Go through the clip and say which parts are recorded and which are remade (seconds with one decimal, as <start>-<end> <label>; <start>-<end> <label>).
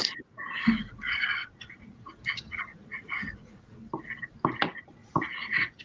0.0-1.4 recorded; 1.4-2.1 remade; 2.1-2.7 recorded; 2.7-3.6 remade; 3.6-5.0 recorded; 5.0-5.8 remade